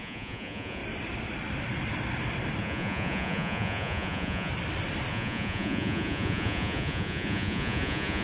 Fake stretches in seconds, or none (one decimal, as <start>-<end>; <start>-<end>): 0.0-0.8; 2.6-4.5; 5.1-8.2

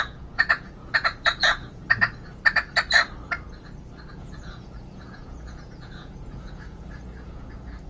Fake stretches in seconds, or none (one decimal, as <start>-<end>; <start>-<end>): 0.0-1.8; 4.1-7.9

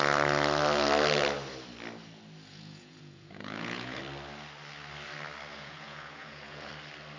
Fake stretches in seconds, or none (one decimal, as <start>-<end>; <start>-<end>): 2.5-4.0; 5.5-6.7

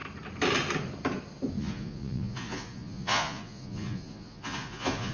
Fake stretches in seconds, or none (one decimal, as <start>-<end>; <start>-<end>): 1.6-5.1